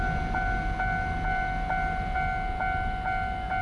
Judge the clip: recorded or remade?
recorded